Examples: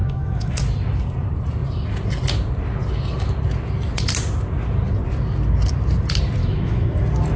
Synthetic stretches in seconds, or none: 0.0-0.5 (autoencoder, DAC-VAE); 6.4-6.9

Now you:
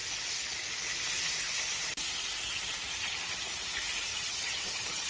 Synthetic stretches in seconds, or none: 4.1-5.1 (vocoder, HiFi-GAN)